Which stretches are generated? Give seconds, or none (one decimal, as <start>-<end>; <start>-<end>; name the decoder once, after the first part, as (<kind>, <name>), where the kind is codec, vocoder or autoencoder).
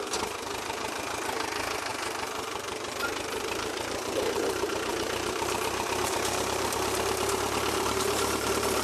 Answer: 0.0-8.8 (vocoder, BigVGAN v2)